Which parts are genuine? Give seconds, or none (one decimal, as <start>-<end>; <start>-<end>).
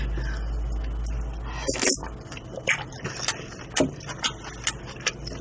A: 0.0-5.4